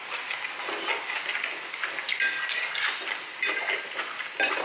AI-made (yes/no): no